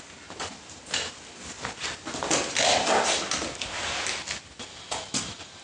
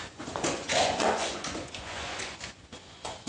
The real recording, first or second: first